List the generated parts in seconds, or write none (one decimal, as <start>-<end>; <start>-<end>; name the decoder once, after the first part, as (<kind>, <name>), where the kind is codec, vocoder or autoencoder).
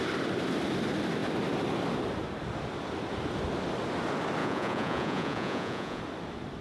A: 4.4-6.0 (vocoder, Vocos)